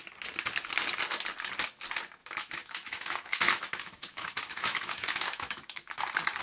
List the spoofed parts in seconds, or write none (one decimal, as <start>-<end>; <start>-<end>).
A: 2.2-6.0